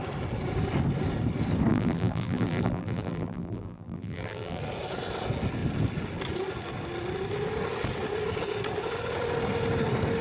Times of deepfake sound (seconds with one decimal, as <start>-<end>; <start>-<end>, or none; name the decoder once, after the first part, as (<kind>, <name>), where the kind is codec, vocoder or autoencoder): 1.7-4.6 (vocoder, BigVGAN v2)